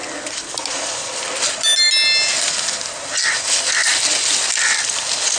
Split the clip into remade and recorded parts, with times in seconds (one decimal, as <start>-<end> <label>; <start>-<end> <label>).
0.0-5.4 recorded